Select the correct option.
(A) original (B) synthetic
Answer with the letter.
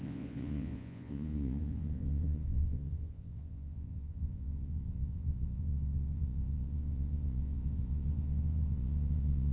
B